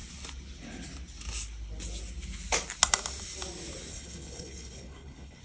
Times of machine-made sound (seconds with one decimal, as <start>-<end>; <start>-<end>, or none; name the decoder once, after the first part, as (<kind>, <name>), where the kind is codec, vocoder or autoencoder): 3.9-5.4 (codec, HILCodec)